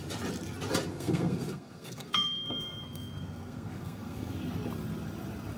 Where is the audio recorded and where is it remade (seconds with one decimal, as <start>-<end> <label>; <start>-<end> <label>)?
0.0-0.9 recorded; 0.9-4.3 remade; 4.3-5.6 recorded